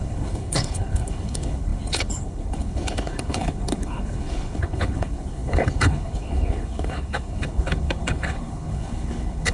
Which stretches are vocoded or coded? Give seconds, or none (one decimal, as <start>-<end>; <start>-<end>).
0.0-9.5